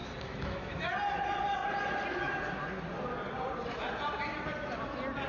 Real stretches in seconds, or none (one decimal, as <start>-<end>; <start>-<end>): 0.9-5.3